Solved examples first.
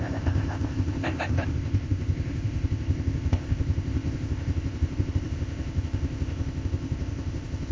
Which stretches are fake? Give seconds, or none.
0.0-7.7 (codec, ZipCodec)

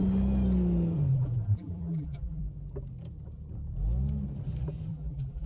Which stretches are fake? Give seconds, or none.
1.1-2.4 (vocoder, BigVGAN v2); 4.9-5.5

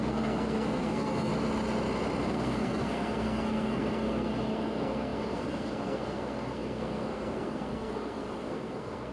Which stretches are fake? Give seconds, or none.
0.0-1.3 (codec, SNAC); 2.3-9.1

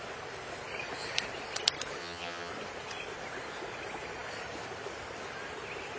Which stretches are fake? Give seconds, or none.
2.0-2.5 (vocoder, HiFi-GAN)